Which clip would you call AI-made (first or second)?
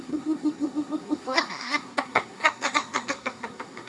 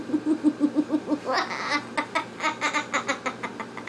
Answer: first